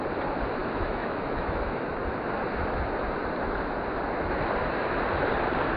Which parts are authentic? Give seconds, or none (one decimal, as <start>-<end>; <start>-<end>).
0.0-0.6; 2.0-5.8

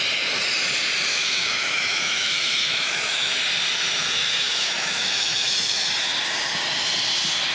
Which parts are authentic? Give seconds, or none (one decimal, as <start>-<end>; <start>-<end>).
0.0-1.1; 3.3-4.0; 5.9-7.5

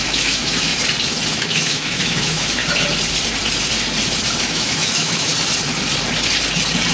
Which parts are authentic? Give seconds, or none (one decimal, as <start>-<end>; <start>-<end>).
0.7-1.3; 2.6-4.4; 5.3-6.9

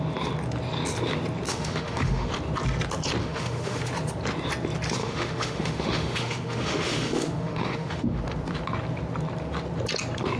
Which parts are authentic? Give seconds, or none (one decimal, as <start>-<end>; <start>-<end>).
0.0-1.5; 2.3-3.2; 3.9-5.0; 8.2-10.4

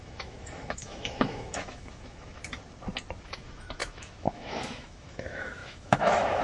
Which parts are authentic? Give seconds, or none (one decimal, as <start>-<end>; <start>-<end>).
2.4-3.2